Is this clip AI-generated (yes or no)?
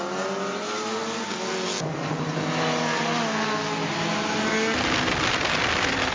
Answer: no